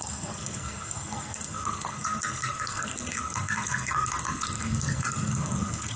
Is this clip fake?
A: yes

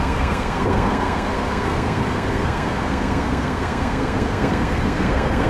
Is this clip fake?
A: yes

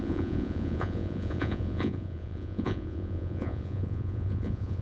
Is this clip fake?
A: yes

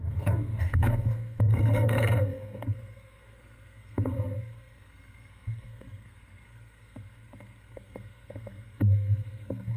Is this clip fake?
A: yes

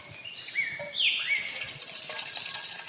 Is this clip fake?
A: yes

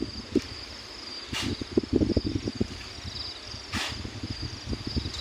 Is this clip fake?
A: no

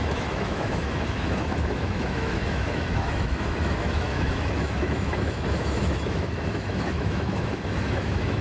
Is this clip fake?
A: yes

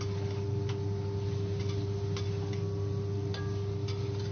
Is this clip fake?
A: no